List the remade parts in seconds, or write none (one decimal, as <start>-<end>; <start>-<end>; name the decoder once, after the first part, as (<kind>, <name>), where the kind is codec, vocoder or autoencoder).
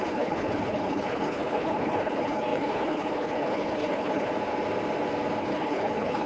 0.0-4.3 (codec, HILCodec); 5.4-6.3